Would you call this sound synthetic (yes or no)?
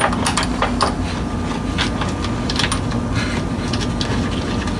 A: no